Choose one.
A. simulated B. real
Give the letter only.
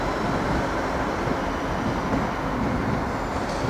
B